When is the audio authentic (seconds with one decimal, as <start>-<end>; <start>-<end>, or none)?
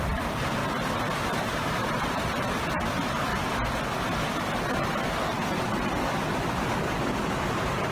0.6-1.2; 3.3-7.5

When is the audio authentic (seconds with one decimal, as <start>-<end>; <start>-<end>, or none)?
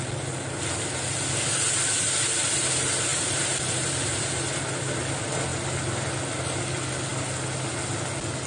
0.0-3.1; 4.3-8.5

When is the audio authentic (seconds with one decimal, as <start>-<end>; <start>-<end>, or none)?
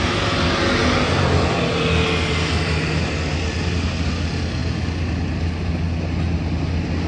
0.0-7.1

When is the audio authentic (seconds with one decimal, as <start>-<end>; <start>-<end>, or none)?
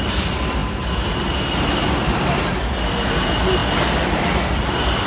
0.0-5.1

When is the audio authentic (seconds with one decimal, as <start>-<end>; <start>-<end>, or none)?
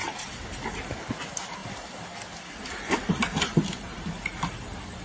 0.0-1.6; 4.6-5.0